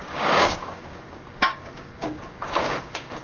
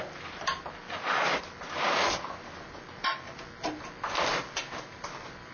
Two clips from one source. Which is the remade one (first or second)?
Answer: first